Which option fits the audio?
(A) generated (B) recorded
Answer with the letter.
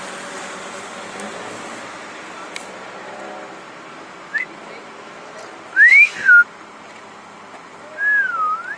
B